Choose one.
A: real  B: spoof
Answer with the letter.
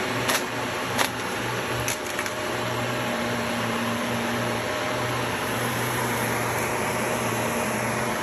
B